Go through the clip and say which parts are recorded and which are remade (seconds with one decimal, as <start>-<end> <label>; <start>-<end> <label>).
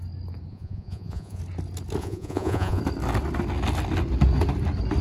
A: 0.0-0.5 recorded; 0.5-1.4 remade; 1.4-2.0 recorded; 2.0-2.8 remade; 2.8-5.0 recorded